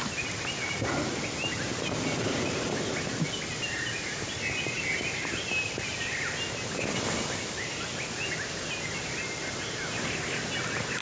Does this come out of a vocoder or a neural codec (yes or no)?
no